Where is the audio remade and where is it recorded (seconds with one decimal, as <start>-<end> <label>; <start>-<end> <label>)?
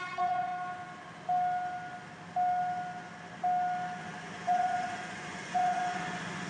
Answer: 0.0-0.5 remade; 0.5-4.0 recorded; 4.0-6.5 remade